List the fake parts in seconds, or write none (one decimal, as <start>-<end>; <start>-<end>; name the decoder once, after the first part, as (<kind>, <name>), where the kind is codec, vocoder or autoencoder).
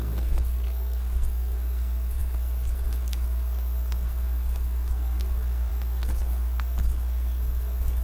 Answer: 0.0-8.0 (codec, SNAC)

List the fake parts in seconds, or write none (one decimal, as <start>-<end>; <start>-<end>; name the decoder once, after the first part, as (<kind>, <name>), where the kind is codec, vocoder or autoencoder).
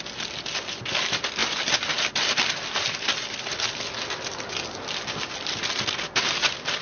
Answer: none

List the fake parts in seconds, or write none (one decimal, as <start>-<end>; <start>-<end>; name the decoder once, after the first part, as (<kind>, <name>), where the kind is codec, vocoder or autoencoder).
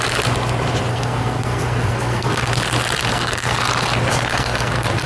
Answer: 0.9-2.5 (codec, SNAC); 3.1-3.6; 4.1-5.1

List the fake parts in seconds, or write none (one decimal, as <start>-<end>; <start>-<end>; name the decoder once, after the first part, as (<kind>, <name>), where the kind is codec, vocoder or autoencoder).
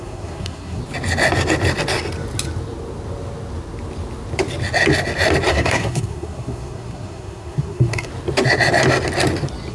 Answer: 0.0-0.8 (codec, SNAC); 5.5-8.1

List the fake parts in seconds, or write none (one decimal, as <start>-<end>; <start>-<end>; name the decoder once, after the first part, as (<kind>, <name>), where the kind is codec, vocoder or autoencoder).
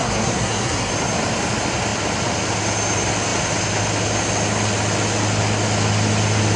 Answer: 0.0-0.9 (codec, SNAC)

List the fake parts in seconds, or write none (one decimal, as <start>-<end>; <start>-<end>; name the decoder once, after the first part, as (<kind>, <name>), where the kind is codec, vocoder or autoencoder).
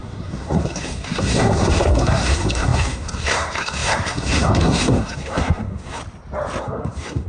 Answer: 0.0-6.0 (codec, SNAC); 6.6-7.3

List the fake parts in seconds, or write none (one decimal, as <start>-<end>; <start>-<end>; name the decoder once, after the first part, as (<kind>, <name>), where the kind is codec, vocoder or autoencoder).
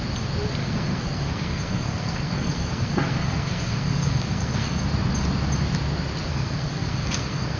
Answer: 0.6-4.8 (codec, SNAC); 6.3-7.6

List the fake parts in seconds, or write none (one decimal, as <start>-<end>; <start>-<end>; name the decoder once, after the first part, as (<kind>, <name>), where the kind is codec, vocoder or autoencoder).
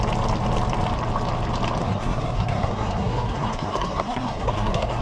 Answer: 1.8-5.0 (codec, SNAC)